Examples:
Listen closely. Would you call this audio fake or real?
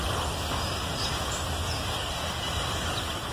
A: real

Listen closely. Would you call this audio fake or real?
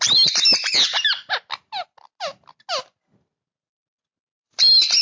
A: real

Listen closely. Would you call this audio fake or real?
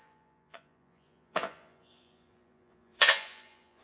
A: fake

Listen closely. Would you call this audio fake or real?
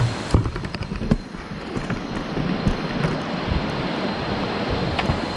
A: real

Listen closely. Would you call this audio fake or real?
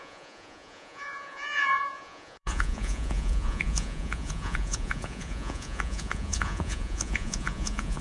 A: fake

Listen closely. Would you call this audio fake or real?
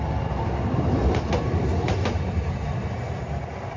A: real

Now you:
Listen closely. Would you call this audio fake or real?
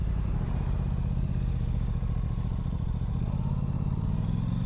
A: fake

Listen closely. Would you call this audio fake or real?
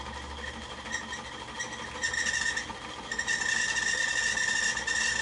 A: real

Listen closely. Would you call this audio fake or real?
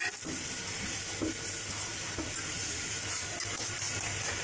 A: real